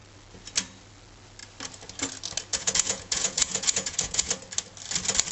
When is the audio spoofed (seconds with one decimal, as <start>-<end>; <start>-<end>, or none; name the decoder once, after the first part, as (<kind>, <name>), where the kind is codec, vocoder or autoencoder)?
2.5-4.3 (vocoder, Vocos)